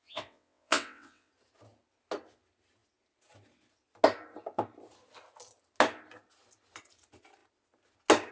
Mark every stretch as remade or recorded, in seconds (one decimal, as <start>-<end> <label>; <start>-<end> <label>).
0.0-1.3 remade; 1.3-8.3 recorded